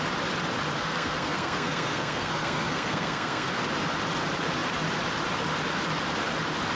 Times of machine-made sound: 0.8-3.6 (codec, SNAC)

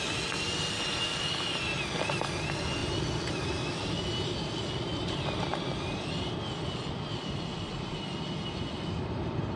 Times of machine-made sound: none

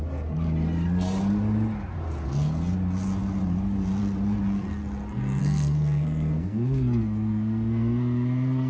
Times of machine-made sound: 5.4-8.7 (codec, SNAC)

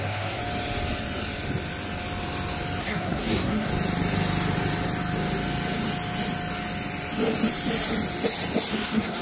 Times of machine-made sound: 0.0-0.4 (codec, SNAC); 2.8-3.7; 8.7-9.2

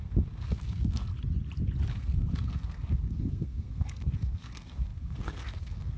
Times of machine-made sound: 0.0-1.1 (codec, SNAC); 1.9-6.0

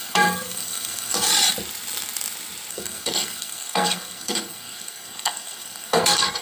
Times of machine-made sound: 0.0-1.3 (codec, SNAC); 2.7-6.4

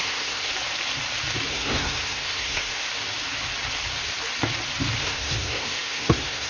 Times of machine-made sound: 0.0-0.5 (codec, SNAC); 1.5-2.8; 5.0-6.5

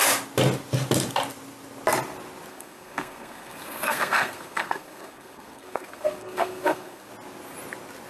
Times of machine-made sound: 2.5-7.1 (codec, SNAC)